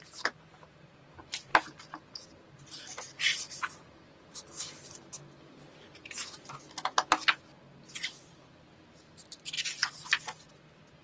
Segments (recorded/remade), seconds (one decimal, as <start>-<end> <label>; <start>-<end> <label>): 0.0-1.5 remade; 1.5-2.7 recorded; 2.7-6.0 remade; 6.0-8.4 recorded; 8.4-9.8 remade; 9.8-10.5 recorded; 10.5-11.0 remade